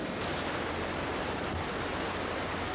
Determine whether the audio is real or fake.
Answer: real